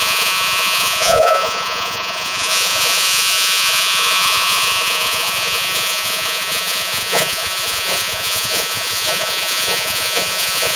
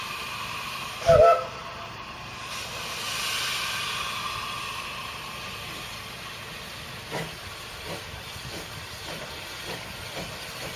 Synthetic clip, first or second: first